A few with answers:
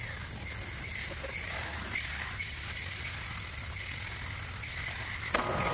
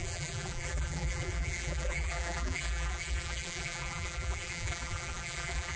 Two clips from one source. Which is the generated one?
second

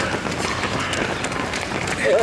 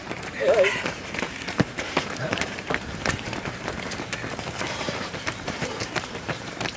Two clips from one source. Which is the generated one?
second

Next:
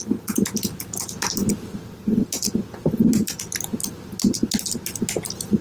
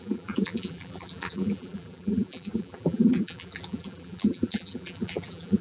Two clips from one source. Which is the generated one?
second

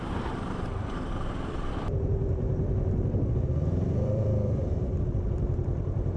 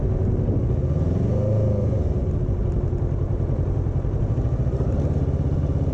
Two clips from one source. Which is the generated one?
first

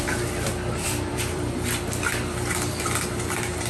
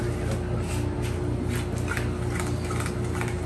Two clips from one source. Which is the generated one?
first